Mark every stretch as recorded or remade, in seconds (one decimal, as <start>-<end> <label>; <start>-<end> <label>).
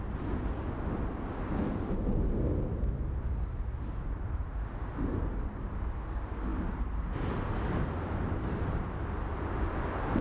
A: 0.0-10.2 recorded